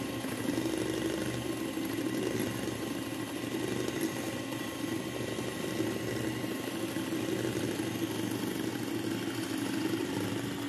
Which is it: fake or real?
real